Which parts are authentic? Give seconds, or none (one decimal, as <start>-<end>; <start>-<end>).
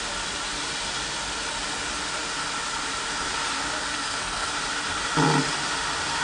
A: 0.0-3.9; 4.5-6.2